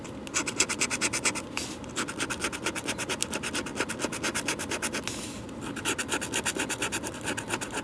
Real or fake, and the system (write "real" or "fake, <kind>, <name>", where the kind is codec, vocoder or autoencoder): real